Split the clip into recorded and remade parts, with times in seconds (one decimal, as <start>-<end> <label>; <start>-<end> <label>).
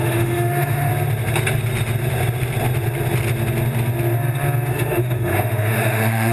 0.0-0.9 remade; 0.9-4.7 recorded; 4.7-6.3 remade